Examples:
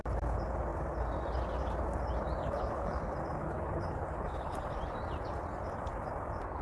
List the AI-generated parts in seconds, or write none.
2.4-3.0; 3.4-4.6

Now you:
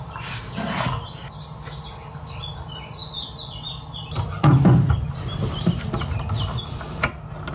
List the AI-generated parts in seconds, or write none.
none

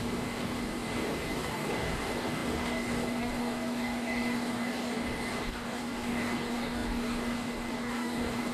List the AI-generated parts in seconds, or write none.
0.0-8.5